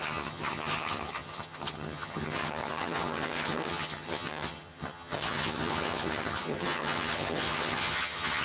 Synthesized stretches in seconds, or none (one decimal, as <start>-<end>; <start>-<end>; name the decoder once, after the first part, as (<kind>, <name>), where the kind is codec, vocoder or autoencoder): 0.0-8.4 (vocoder, HiFi-GAN)